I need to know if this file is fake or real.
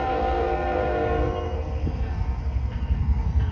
fake